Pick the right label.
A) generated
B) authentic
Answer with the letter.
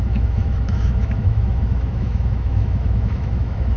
A